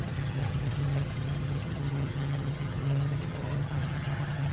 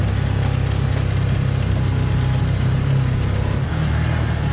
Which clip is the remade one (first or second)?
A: first